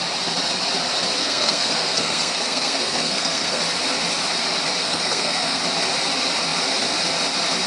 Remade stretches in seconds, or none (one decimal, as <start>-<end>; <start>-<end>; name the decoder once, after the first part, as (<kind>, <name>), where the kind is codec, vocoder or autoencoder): 1.2-3.6 (codec, SNAC); 4.8-5.6